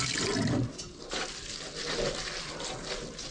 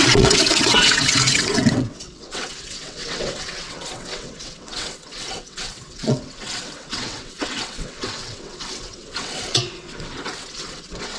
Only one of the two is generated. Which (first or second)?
second